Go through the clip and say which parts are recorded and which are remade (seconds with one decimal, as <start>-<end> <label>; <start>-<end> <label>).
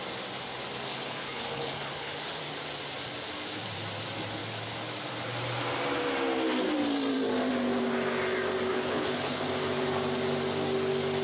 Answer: 0.0-0.9 recorded; 0.9-2.4 remade; 2.4-8.7 recorded; 8.7-9.4 remade; 9.4-11.2 recorded